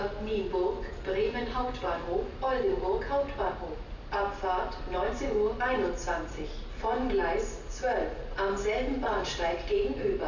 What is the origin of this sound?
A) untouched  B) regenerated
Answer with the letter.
A